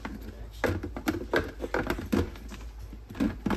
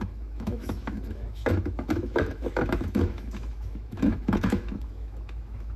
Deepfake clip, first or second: second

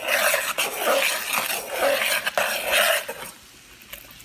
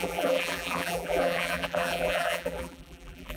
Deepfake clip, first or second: second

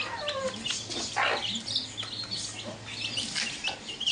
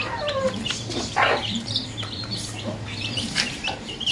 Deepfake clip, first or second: second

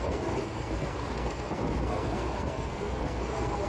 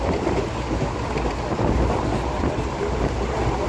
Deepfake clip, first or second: first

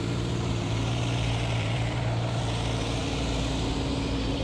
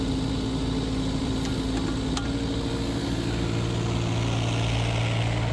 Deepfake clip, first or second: first